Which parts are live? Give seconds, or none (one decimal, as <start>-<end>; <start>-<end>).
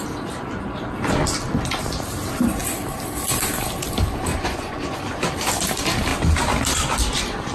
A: 0.0-4.3; 5.0-7.5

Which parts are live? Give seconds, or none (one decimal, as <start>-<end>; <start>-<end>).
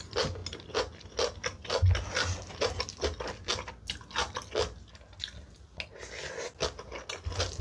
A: 0.0-7.6